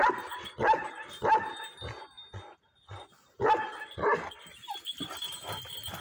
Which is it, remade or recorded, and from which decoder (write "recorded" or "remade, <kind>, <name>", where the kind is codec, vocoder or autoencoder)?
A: recorded